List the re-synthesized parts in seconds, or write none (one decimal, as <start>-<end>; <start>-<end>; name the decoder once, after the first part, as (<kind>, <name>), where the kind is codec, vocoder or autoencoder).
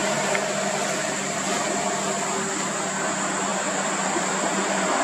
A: none